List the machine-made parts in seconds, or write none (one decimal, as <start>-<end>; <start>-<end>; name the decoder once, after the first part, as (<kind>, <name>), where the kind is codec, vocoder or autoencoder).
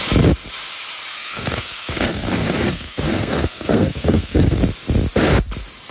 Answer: 1.1-4.6 (codec, SNAC)